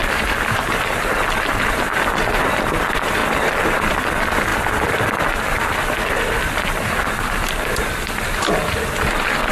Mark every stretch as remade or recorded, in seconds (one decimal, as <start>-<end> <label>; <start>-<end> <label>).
0.0-1.1 remade; 1.1-3.2 recorded; 3.2-3.9 remade; 3.9-9.5 recorded